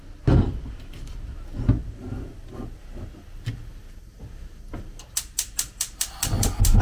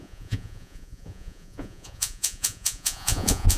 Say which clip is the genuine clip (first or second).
first